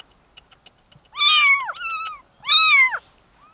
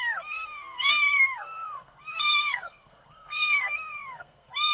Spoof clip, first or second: second